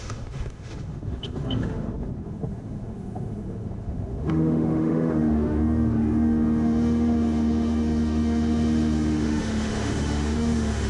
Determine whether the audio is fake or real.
fake